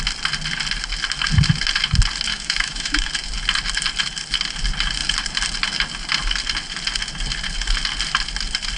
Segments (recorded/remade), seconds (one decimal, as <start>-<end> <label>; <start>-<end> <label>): 0.0-2.3 recorded; 2.3-3.1 remade; 3.1-8.8 recorded